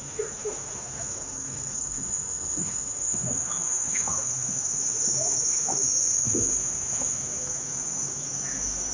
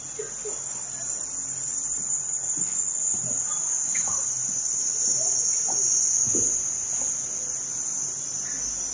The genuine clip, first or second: second